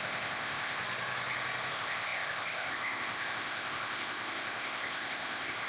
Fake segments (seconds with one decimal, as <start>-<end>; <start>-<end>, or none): 0.0-0.8; 1.7-5.7